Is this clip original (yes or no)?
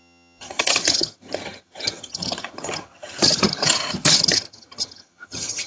no